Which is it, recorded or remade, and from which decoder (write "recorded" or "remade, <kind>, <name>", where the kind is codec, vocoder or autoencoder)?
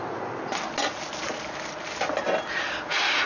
recorded